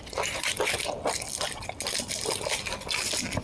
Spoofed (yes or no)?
no